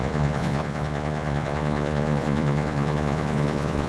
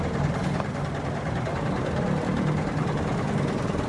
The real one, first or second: second